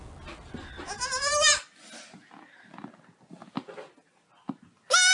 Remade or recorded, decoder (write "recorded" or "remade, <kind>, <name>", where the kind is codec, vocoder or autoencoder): recorded